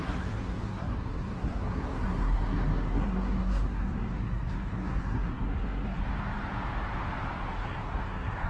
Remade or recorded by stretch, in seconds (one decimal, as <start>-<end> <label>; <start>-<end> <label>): 0.0-6.0 remade; 6.0-7.5 recorded; 7.5-8.5 remade